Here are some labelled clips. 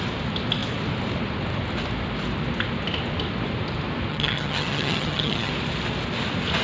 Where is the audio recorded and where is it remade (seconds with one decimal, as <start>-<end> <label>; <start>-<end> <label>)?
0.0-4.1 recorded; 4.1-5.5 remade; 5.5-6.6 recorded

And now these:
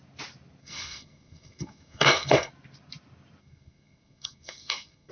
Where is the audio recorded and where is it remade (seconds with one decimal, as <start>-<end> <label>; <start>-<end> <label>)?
0.0-0.6 recorded; 0.6-2.5 remade; 2.5-3.4 recorded; 3.4-5.1 remade

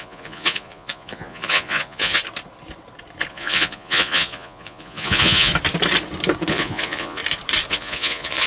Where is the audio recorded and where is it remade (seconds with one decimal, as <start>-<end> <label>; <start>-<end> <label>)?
0.0-2.2 remade; 2.2-3.3 recorded; 3.3-5.5 remade; 5.5-6.5 recorded; 6.5-7.2 remade; 7.2-7.7 recorded; 7.7-8.5 remade

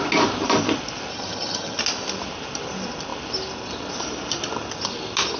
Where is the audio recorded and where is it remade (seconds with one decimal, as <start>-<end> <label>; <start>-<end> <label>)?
0.0-1.1 recorded; 1.1-1.8 remade; 1.8-5.4 recorded

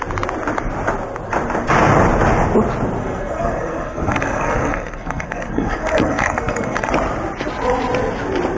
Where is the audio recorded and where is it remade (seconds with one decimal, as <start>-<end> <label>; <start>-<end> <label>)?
0.0-3.0 recorded; 3.0-6.9 remade; 6.9-8.6 recorded

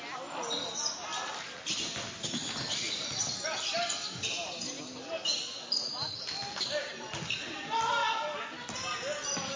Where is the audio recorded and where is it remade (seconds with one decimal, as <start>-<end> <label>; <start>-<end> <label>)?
0.0-9.6 recorded

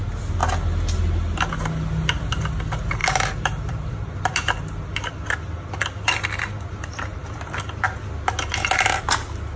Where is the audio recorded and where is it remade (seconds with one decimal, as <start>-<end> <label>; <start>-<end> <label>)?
0.0-3.0 recorded; 3.0-4.2 remade; 4.2-7.1 recorded; 7.1-7.6 remade; 7.6-9.6 recorded

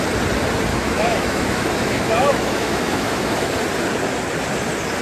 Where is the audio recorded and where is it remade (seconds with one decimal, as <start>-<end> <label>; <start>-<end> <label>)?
0.0-0.7 recorded; 0.7-3.5 remade; 3.5-5.0 recorded